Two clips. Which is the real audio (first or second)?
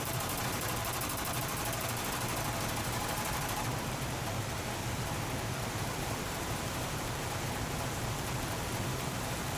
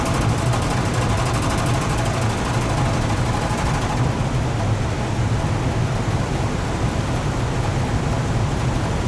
second